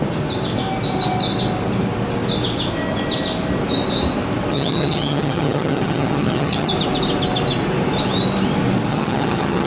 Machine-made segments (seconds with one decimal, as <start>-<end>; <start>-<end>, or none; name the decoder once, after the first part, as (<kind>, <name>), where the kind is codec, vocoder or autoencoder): 4.5-6.7 (vocoder, HiFi-GAN); 8.9-9.7